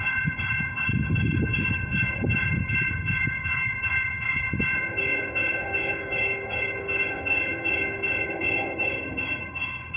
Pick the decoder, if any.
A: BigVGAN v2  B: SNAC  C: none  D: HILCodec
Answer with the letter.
D